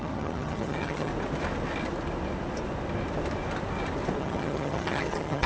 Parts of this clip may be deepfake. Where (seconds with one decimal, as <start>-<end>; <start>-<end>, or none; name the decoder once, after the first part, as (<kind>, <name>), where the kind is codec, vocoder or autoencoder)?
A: 0.0-1.1 (vocoder, HiFi-GAN); 4.2-5.5